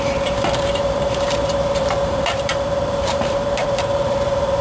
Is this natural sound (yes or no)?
no